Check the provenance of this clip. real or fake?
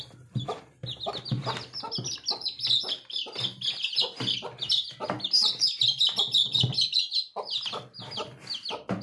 real